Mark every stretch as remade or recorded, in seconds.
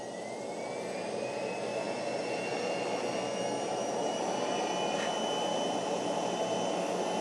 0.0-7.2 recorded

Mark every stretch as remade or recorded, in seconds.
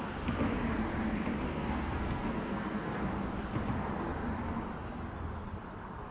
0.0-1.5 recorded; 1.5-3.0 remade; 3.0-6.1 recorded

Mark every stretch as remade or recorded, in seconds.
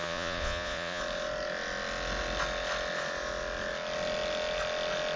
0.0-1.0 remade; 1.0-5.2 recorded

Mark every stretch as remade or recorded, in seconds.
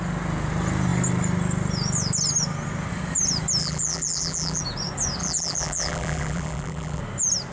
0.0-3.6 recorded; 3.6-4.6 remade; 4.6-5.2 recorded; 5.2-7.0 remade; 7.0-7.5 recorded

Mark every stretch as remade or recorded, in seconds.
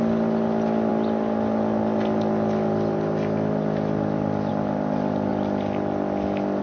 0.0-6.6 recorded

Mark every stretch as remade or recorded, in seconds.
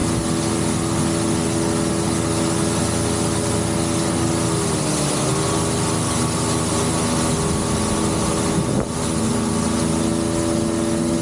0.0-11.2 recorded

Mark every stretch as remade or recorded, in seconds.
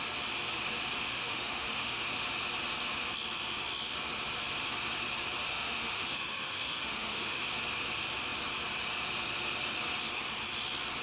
0.0-1.1 recorded; 1.1-2.0 remade; 2.0-5.5 recorded; 5.5-7.4 remade; 7.4-11.0 recorded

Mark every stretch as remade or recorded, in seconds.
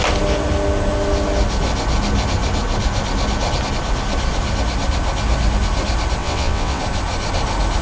0.0-6.2 recorded; 6.2-6.8 remade; 6.8-7.8 recorded